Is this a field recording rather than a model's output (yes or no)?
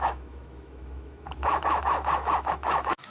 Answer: no